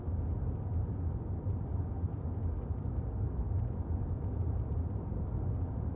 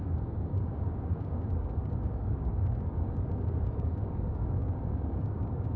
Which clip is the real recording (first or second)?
first